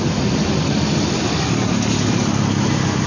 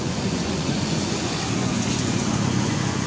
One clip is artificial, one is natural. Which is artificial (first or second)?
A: second